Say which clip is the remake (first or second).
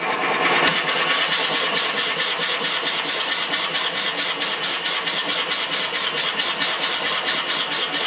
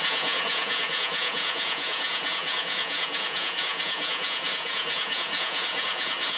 second